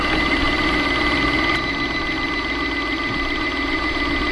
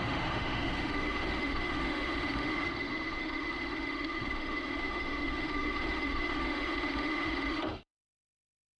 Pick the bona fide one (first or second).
first